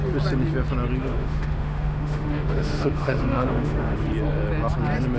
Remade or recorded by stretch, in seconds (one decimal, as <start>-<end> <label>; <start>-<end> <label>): 0.0-1.0 recorded; 1.0-4.1 remade; 4.1-5.2 recorded